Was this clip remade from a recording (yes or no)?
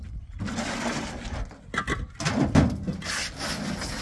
no